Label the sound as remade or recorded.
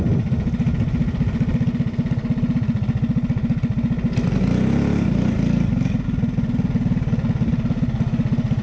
recorded